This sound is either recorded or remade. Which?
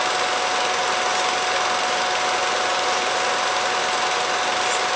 recorded